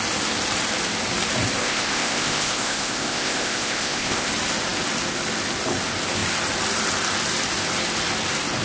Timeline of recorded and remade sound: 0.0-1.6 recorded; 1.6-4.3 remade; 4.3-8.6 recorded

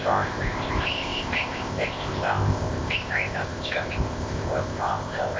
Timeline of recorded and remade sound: 0.0-5.4 remade

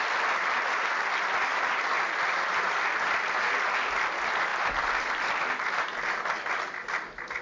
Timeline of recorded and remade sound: 0.0-7.4 recorded

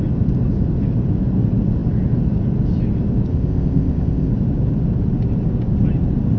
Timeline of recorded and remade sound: 0.0-3.3 recorded; 3.3-4.3 remade; 4.3-6.4 recorded